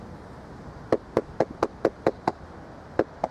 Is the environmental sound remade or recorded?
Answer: recorded